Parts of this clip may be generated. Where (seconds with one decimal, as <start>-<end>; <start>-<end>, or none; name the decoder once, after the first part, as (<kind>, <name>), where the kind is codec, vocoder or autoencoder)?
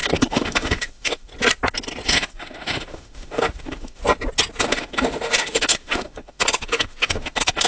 0.0-1.3 (autoencoder, DAC-VAE); 2.1-4.0; 4.6-7.7